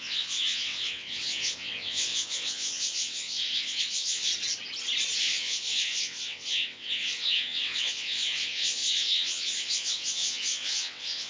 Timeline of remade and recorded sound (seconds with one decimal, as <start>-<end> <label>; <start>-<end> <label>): 0.0-4.3 remade; 4.3-5.2 recorded; 5.2-11.3 remade